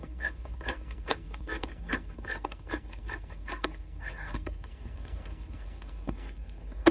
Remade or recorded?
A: remade